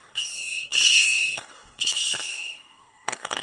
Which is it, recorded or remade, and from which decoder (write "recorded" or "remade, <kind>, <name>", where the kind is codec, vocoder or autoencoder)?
remade, codec, SNAC